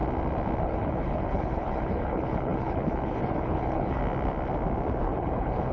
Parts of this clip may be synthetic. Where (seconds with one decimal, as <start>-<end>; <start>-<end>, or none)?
0.6-4.0; 5.0-5.7